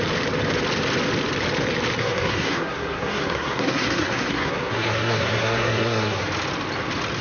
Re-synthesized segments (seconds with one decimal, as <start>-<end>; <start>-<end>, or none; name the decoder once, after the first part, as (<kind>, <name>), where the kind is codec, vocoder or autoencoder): 2.0-6.2 (codec, SNAC)